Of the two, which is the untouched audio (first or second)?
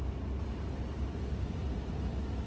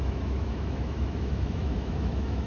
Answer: first